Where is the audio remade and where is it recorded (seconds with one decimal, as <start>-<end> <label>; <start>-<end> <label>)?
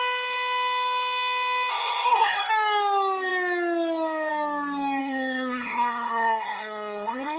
0.0-1.7 recorded; 1.7-2.5 remade; 2.5-5.0 recorded; 5.0-7.4 remade